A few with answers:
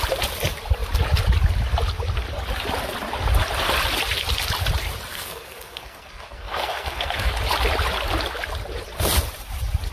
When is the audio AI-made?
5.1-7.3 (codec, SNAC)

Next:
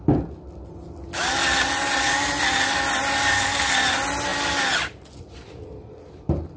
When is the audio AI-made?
none

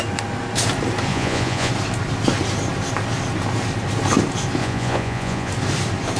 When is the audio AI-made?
1.1-1.7 (vocoder, Vocos); 4.6-5.5

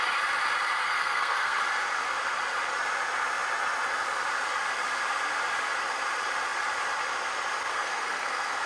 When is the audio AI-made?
0.8-1.6 (codec, SNAC); 7.7-8.7

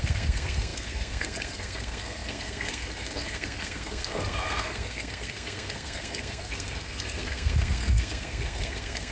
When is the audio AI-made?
0.0-9.1 (codec, SNAC)

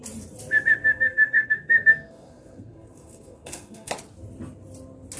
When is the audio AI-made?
0.8-3.9 (codec, SNAC)

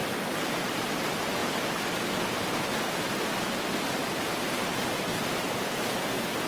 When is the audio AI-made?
0.0-0.8 (vocoder, BigVGAN v2); 1.4-5.3